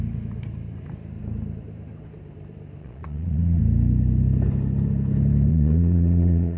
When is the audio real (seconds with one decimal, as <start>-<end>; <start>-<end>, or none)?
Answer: 0.0-2.8; 3.6-5.5